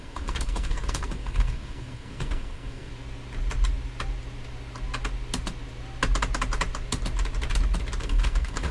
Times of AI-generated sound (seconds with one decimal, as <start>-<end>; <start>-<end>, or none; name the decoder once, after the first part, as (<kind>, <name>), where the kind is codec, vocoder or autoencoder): 0.0-2.9 (codec, SNAC); 8.0-8.7